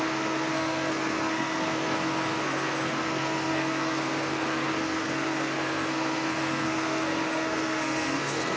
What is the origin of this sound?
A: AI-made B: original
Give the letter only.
A